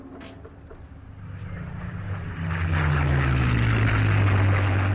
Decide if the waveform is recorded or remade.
recorded